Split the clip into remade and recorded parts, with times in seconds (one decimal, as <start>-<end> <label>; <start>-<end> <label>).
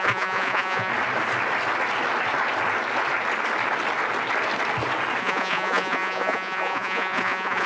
0.0-0.9 remade; 0.9-5.2 recorded; 5.2-7.7 remade